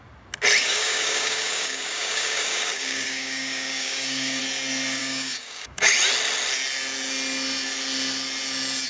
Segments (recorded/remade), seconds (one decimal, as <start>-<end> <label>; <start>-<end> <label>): 0.0-0.6 recorded; 0.6-4.4 remade; 4.4-5.0 recorded; 5.0-5.9 remade; 5.9-8.9 recorded